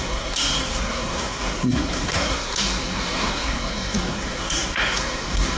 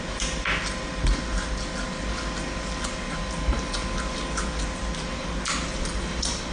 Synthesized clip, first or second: first